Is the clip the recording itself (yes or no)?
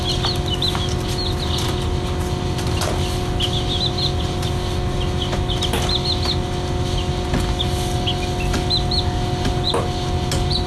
yes